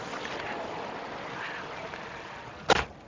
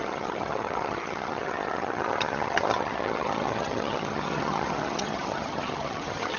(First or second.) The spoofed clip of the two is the second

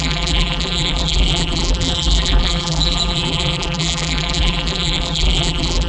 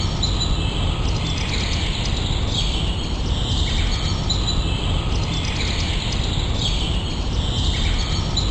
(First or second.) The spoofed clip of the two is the first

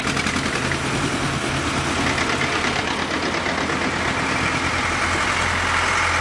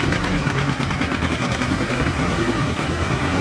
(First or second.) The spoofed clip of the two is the second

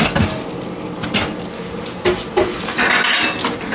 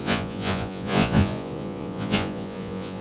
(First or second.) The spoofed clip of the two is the second